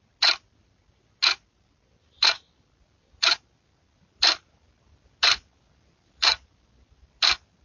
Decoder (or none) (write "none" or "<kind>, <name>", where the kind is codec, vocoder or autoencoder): none